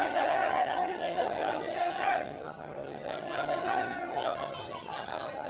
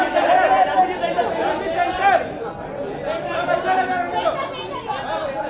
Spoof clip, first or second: first